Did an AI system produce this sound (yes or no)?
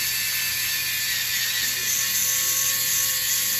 no